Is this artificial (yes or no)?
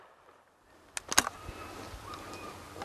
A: no